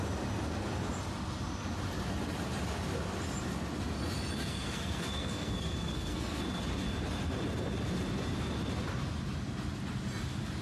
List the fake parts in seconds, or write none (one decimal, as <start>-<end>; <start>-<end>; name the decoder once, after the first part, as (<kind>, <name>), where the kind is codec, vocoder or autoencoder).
4.4-6.4 (codec, SNAC)